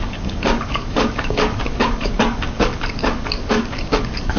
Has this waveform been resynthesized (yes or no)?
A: yes